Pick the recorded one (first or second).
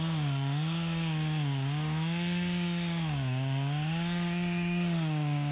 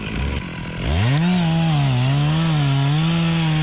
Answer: second